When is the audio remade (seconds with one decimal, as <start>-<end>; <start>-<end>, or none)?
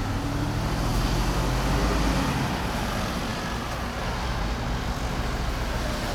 none